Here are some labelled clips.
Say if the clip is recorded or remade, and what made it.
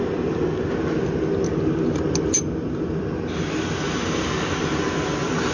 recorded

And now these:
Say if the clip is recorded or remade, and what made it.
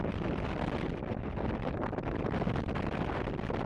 recorded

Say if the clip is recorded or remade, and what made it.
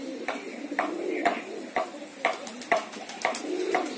recorded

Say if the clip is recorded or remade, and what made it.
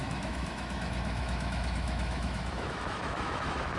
remade, autoencoder, DAC-VAE